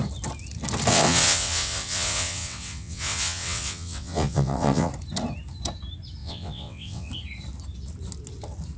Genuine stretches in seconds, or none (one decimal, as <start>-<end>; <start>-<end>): 0.0-0.9; 4.9-6.2; 7.1-8.8